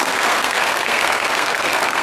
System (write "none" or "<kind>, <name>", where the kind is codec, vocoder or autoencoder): codec, SNAC